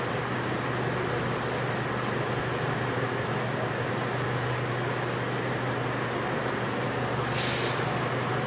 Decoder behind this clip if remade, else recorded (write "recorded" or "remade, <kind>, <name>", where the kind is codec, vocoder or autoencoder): recorded